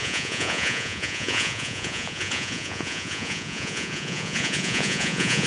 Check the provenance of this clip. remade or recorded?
remade